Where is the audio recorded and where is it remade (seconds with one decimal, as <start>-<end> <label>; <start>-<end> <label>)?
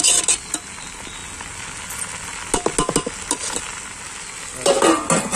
0.0-5.4 recorded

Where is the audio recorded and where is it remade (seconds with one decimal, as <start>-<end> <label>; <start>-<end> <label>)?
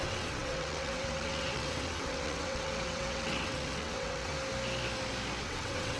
0.0-4.3 remade; 4.3-5.4 recorded; 5.4-6.0 remade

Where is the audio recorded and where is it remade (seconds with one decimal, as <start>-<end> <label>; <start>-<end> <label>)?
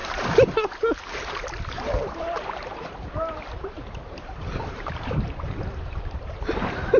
0.0-2.0 recorded; 2.0-6.2 remade; 6.2-7.0 recorded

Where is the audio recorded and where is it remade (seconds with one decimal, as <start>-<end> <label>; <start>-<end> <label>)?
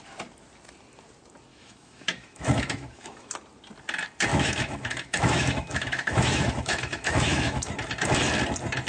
0.0-1.5 recorded; 1.5-3.3 remade; 3.3-4.3 recorded; 4.3-7.7 remade; 7.7-8.9 recorded